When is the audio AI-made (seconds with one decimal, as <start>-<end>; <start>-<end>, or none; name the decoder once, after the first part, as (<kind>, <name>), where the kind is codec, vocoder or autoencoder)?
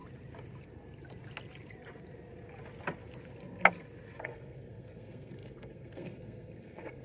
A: 4.2-7.0 (codec, SNAC)